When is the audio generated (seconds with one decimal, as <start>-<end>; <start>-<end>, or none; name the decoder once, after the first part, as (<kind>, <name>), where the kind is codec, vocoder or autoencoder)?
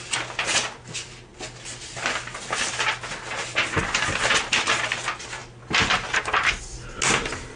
none